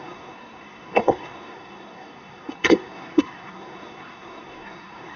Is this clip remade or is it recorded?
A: remade